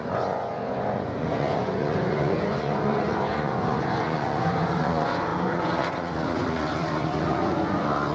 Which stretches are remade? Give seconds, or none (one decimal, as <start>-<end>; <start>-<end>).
0.0-8.1